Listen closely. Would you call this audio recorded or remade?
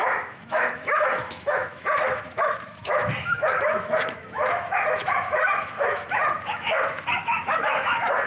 remade